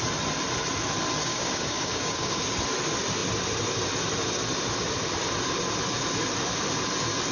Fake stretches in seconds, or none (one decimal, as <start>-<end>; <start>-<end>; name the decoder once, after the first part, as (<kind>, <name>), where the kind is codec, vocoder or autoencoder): 1.2-2.4 (codec, DAC)